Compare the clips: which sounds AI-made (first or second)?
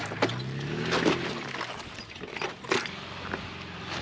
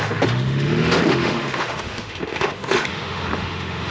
second